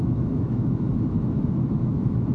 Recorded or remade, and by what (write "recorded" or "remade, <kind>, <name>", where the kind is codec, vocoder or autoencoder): remade, autoencoder, DAC-VAE